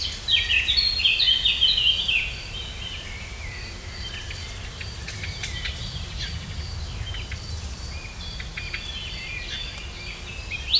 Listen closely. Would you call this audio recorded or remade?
recorded